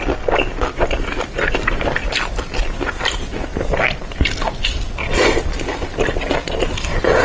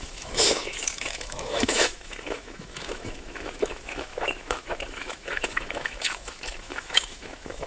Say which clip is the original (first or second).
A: first